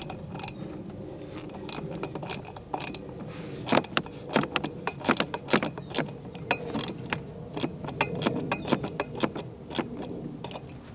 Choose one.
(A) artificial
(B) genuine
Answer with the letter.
B